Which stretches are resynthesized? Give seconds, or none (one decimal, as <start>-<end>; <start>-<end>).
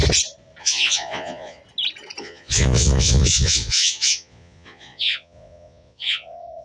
0.6-1.6; 2.2-6.6